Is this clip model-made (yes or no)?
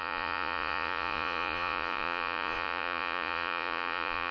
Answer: yes